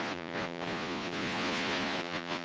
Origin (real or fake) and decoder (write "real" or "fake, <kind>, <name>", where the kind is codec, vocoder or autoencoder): fake, vocoder, Vocos